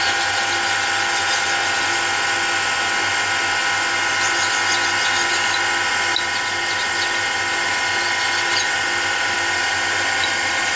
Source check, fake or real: real